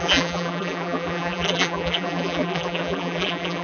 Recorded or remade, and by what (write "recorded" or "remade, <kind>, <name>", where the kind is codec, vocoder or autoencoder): remade, vocoder, BigVGAN v2